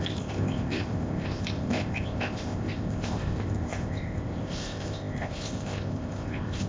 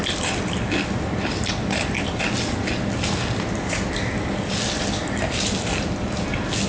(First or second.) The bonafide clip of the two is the second